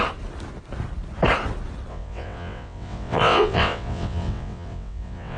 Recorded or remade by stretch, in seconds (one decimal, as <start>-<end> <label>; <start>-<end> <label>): 0.0-1.9 recorded; 1.9-5.4 remade